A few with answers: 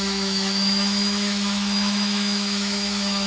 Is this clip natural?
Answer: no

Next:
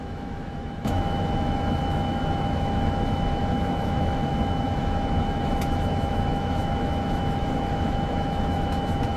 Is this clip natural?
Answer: no